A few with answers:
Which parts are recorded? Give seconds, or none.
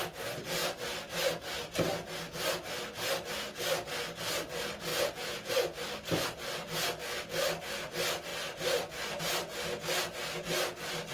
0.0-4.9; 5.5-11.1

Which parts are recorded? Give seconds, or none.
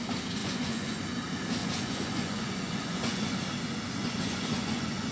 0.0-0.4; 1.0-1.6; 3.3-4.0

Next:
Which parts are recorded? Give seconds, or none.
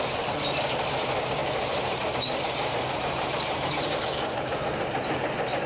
0.0-1.4; 4.8-5.7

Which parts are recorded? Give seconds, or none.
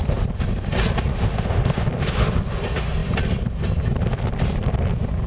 0.0-1.1; 1.9-5.3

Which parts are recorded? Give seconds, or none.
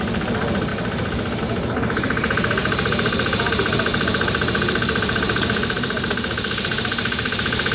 0.0-2.6; 3.5-3.9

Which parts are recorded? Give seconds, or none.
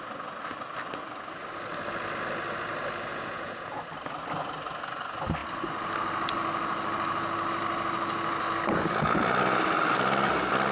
0.0-3.1; 3.8-10.7